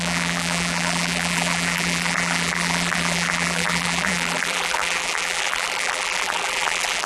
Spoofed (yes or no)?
yes